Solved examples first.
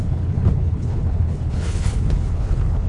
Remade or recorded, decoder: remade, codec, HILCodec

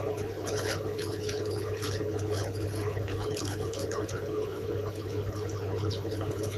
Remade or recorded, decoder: remade, codec, HILCodec